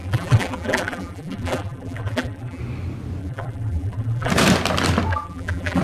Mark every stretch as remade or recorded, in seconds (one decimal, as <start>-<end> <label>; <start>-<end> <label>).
0.0-2.6 remade; 2.6-3.2 recorded; 3.2-4.3 remade; 4.3-5.1 recorded; 5.1-5.8 remade

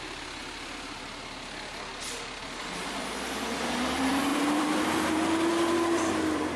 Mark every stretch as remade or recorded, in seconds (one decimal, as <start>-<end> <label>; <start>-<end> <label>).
0.0-0.4 remade; 0.4-3.8 recorded; 3.8-6.6 remade

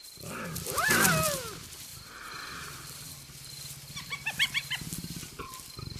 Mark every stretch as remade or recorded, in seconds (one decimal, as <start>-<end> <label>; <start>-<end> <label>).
0.0-6.0 recorded